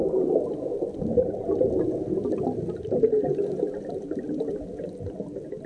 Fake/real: real